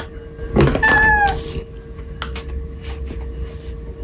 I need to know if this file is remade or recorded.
recorded